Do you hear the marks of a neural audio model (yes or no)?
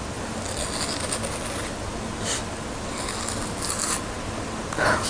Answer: no